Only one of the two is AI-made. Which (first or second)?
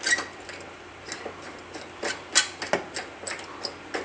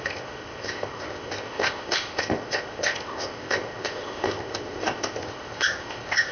second